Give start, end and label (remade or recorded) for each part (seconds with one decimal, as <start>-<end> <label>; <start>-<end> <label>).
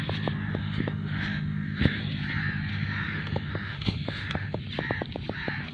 0.0-0.5 recorded; 0.5-2.0 remade; 2.0-2.7 recorded; 2.7-4.6 remade; 4.6-5.7 recorded